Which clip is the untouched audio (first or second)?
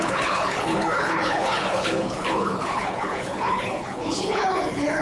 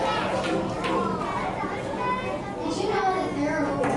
second